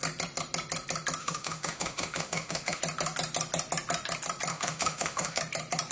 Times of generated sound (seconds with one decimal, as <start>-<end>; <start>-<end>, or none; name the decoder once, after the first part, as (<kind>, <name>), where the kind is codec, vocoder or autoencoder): 1.2-2.8 (autoencoder, DAC-VAE); 4.5-5.4

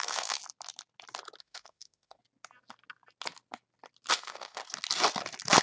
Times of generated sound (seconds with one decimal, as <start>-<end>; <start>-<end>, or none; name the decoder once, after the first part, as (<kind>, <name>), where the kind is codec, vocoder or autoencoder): 0.0-0.4 (autoencoder, DAC-VAE); 1.4-2.2; 4.1-4.6

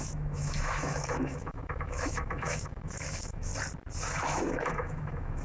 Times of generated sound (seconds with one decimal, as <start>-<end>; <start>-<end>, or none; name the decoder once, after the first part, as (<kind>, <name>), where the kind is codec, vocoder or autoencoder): 0.0-3.5 (autoencoder, DAC-VAE); 4.2-5.4

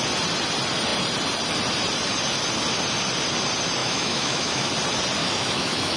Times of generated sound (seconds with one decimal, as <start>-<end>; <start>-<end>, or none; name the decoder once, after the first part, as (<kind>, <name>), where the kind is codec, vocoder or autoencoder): 3.8-4.7 (autoencoder, DAC-VAE); 5.2-6.0

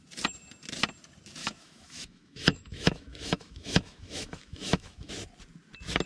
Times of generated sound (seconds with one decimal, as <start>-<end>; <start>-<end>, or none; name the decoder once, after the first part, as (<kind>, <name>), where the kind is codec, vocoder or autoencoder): 1.4-5.1 (autoencoder, DAC-VAE)

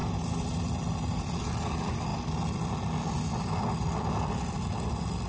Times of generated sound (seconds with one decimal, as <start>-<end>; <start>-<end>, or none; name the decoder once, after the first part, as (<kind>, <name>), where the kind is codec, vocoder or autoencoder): none